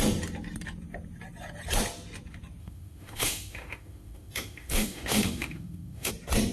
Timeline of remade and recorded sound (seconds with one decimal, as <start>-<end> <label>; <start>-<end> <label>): 0.0-2.6 recorded; 2.6-6.1 remade; 6.1-6.5 recorded